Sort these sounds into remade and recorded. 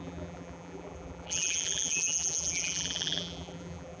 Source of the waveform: remade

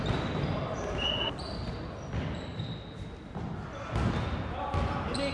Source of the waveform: recorded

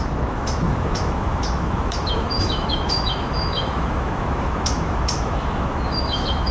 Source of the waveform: remade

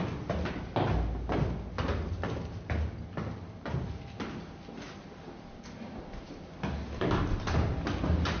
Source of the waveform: recorded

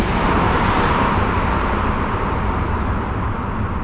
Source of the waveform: recorded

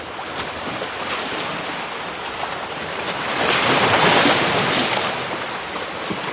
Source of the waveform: recorded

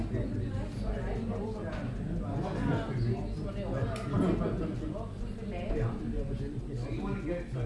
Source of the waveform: recorded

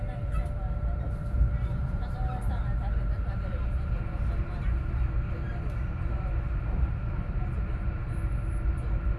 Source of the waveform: remade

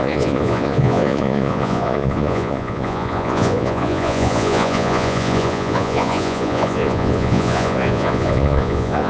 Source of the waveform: remade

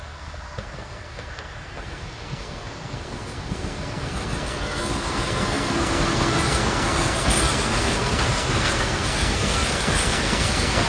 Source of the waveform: remade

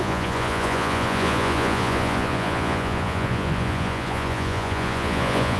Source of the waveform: remade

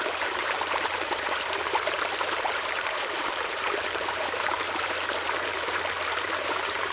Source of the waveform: remade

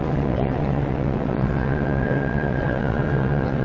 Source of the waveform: remade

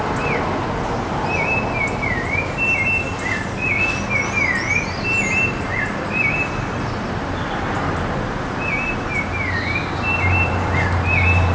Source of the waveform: recorded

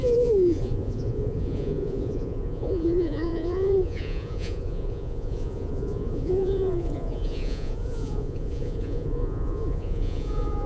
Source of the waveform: remade